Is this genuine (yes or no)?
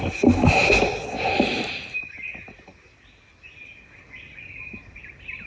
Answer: yes